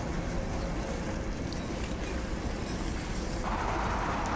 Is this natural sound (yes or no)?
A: yes